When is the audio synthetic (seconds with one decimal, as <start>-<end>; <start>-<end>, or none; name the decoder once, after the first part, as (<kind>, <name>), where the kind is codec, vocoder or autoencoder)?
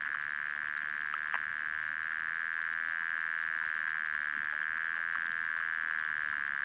none